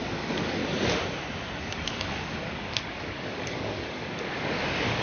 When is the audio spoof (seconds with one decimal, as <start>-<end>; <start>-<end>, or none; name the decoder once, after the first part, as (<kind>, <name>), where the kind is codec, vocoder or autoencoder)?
0.0-0.6 (codec, DAC); 1.6-5.0